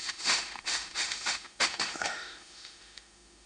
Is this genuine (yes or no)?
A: no